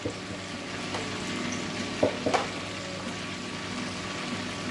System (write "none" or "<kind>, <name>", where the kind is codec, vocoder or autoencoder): none